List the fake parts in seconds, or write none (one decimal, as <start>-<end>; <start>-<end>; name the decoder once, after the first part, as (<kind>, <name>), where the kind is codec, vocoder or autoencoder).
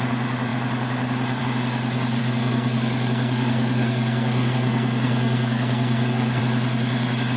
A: 2.2-6.4 (codec, SNAC)